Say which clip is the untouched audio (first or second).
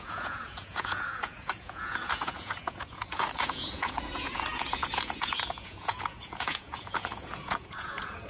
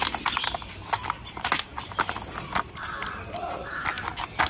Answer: second